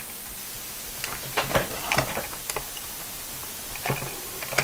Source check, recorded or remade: recorded